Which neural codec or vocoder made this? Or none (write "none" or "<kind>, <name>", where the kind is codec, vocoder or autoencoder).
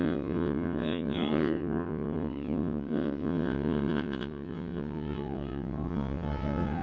vocoder, WaveNeXt